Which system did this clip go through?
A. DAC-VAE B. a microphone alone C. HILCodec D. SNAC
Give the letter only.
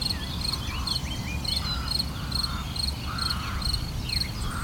B